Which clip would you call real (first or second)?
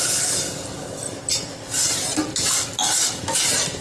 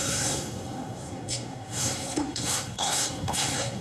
first